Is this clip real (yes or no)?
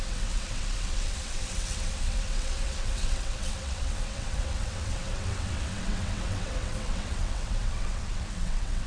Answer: no